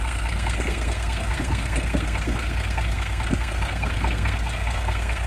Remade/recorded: remade